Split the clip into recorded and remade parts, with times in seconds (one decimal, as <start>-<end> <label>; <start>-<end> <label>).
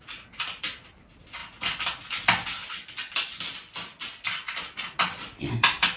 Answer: 0.0-6.0 recorded